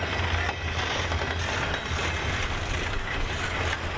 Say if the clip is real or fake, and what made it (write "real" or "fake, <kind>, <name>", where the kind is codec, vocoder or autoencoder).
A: real